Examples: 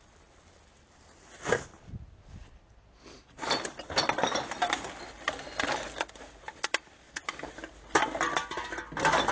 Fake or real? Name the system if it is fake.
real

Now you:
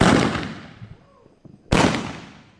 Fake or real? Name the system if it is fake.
real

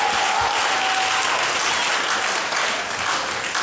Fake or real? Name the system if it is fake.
real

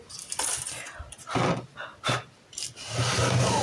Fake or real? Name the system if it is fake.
real